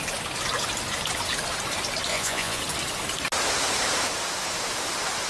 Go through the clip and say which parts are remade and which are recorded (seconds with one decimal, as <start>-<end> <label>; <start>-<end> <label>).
0.0-2.1 recorded; 2.1-2.6 remade; 2.6-5.3 recorded